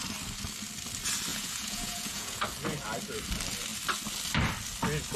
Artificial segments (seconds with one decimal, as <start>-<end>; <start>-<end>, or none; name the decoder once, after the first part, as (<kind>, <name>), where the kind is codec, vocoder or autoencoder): 1.3-2.4 (vocoder, Vocos)